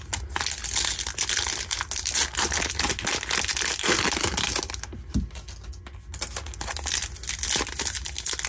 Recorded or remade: recorded